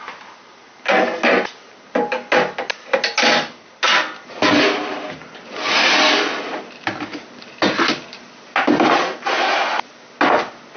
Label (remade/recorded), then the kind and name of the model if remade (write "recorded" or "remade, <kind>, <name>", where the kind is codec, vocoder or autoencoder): recorded